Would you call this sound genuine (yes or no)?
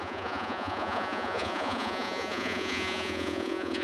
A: no